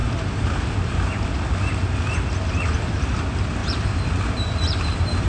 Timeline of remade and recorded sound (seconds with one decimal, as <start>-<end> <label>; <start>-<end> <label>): 0.0-3.6 recorded; 3.6-5.3 remade